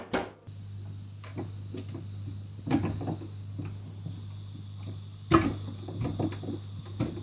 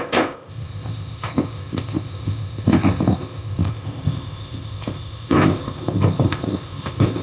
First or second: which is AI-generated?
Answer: second